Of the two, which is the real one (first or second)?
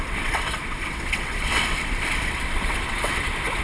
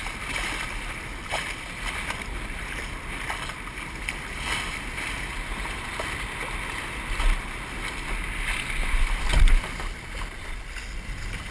second